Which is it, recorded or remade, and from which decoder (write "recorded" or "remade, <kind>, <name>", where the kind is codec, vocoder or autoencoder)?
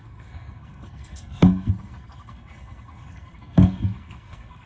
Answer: remade, codec, SNAC